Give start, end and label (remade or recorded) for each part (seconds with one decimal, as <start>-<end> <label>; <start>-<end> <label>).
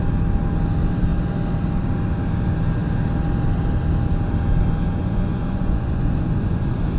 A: 0.0-5.0 recorded; 5.0-7.0 remade